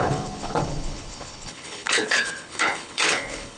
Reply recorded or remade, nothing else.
remade